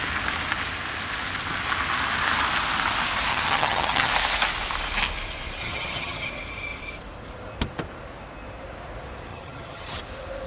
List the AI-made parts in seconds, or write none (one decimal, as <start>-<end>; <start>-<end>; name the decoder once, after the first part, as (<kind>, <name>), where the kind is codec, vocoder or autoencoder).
3.3-4.1 (vocoder, HiFi-GAN); 5.6-6.3; 9.3-10.0

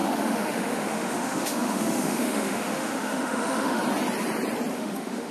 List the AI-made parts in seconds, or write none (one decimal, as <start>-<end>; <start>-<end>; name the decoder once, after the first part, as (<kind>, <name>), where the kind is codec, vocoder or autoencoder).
0.0-3.8 (autoencoder, DAC-VAE); 4.7-5.3

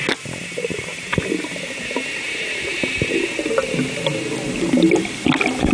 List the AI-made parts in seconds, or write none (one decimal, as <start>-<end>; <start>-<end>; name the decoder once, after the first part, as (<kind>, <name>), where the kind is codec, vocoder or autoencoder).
none

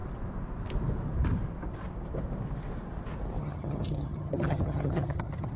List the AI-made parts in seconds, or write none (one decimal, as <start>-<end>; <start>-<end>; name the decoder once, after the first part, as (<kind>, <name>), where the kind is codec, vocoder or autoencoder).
3.4-5.6 (vocoder, HiFi-GAN)